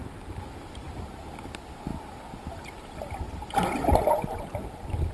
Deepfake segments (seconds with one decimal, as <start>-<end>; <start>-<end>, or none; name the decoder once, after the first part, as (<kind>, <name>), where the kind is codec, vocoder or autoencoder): none